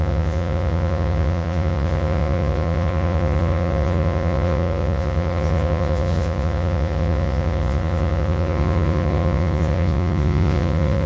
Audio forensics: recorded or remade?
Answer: remade